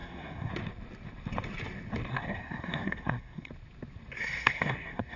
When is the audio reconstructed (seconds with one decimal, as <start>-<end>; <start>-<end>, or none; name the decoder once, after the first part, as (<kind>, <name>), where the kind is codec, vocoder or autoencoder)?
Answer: 0.0-0.5 (codec, SNAC); 2.1-3.5; 4.2-5.2